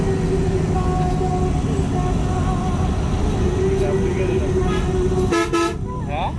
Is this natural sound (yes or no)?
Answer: yes